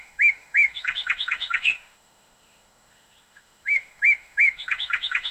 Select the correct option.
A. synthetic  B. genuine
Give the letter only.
A